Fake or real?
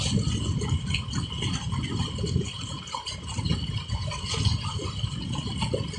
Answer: real